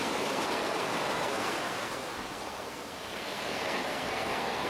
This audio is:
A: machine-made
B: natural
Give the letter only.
A